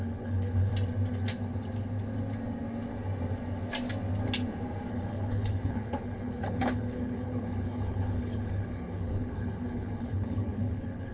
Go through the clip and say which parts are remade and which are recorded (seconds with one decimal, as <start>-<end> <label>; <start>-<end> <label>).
0.0-0.7 remade; 0.7-4.9 recorded; 4.9-11.1 remade